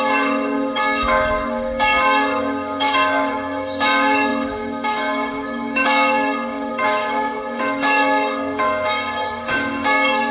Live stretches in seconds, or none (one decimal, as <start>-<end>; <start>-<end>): none